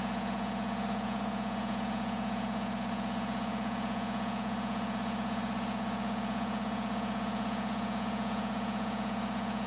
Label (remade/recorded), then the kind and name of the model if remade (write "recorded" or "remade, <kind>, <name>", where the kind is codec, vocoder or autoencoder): remade, vocoder, Vocos